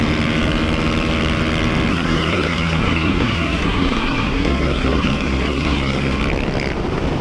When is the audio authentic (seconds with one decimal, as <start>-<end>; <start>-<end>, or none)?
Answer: 0.0-1.9; 6.2-7.2